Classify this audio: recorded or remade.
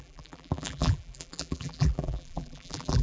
remade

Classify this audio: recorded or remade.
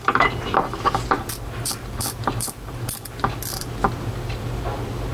remade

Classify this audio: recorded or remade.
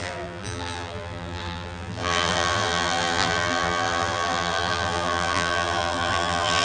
remade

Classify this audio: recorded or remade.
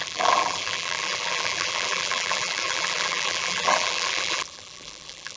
remade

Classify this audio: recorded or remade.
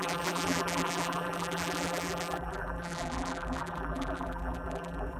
remade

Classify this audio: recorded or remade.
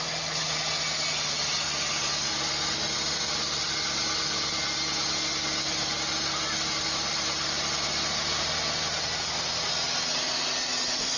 recorded